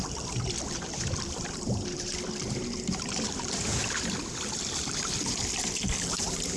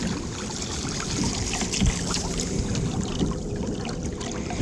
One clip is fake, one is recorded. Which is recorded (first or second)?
second